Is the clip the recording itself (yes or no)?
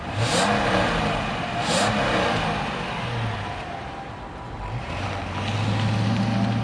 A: yes